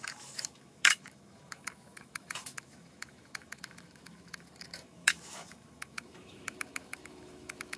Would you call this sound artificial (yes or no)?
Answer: yes